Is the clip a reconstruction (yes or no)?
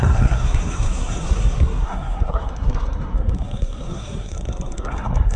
yes